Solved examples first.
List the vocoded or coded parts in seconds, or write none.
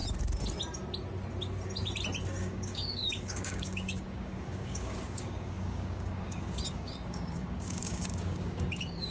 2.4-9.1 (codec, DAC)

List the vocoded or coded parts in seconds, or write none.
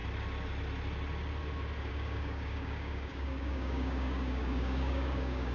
1.9-5.5 (codec, DAC)